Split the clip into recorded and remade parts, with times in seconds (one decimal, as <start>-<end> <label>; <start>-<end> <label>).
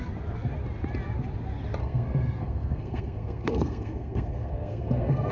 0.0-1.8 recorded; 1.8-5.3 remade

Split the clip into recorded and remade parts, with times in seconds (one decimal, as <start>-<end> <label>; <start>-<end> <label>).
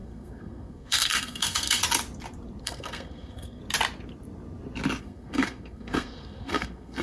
0.0-1.8 remade; 1.8-2.6 recorded; 2.6-3.6 remade; 3.6-5.0 recorded; 5.0-7.0 remade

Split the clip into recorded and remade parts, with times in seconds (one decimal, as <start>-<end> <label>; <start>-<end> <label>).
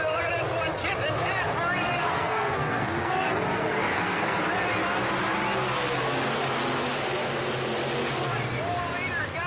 0.0-2.0 recorded; 2.0-4.4 remade; 4.4-9.5 recorded